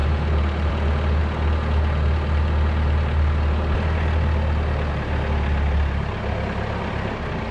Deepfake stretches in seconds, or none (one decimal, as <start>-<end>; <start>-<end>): none